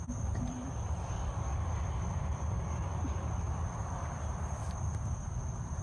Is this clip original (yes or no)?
no